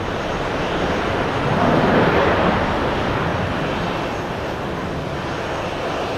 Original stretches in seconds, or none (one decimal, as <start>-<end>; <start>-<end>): 0.0-6.2